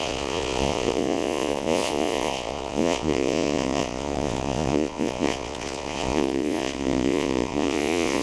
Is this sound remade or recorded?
remade